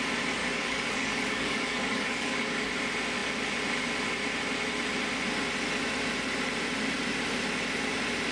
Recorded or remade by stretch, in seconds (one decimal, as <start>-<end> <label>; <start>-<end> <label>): 0.0-0.4 recorded; 0.4-2.7 remade; 2.7-8.3 recorded

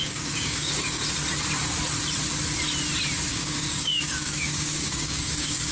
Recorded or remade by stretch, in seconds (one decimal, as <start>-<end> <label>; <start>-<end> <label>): 0.0-1.0 remade; 1.0-3.3 recorded; 3.3-5.7 remade